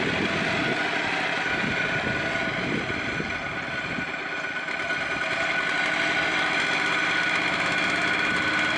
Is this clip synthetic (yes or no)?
no